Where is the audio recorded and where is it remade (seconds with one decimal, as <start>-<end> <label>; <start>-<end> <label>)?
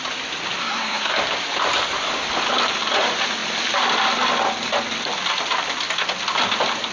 0.0-0.6 recorded; 0.6-1.1 remade; 1.1-6.9 recorded